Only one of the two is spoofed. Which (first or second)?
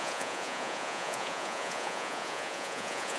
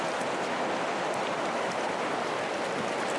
first